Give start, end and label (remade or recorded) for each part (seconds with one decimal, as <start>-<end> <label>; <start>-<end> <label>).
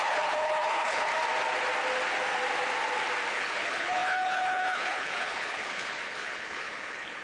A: 0.0-1.1 remade; 1.1-3.3 recorded; 3.3-7.2 remade